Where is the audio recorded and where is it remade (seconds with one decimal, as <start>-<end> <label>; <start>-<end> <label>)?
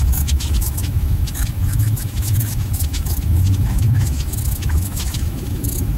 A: 0.0-6.0 remade